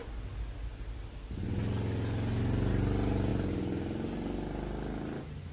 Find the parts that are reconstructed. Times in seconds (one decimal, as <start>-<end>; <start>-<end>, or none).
none